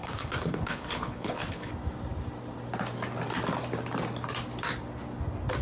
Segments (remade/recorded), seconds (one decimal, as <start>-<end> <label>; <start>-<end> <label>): 0.0-1.7 remade; 1.7-5.6 recorded